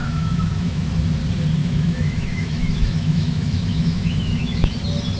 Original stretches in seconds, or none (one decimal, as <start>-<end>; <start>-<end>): 0.9-1.6; 4.7-5.2